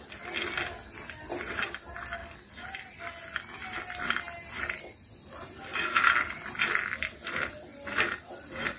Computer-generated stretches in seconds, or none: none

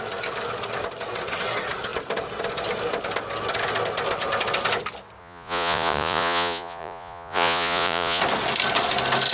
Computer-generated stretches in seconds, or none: 5.2-8.2 (vocoder, Vocos)